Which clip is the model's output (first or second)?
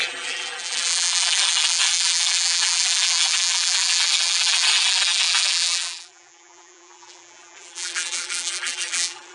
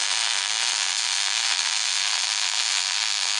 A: first